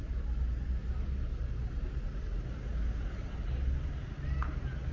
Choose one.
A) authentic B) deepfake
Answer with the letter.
A